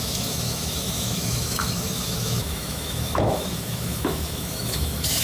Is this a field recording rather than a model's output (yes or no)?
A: no